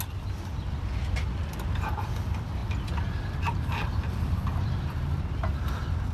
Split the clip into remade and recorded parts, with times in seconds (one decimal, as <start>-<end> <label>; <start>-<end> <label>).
0.0-2.6 recorded; 2.6-5.2 remade; 5.2-6.1 recorded